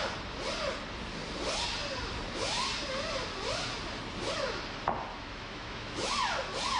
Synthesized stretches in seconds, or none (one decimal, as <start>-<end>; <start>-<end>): 5.1-6.1